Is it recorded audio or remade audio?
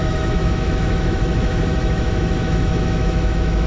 remade